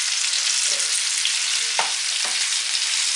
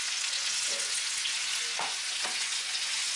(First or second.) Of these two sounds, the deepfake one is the second